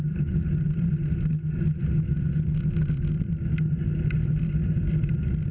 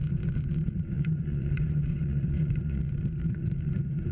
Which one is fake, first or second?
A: second